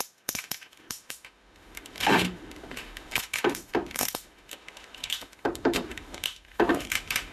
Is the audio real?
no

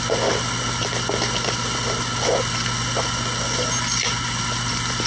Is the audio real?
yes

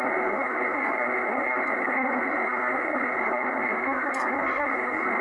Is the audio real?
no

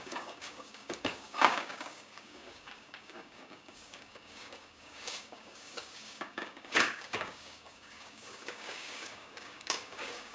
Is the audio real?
no